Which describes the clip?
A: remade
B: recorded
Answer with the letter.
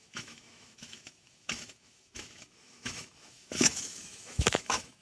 A